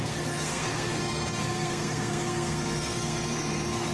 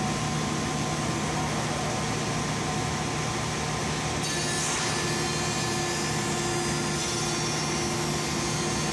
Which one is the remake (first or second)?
first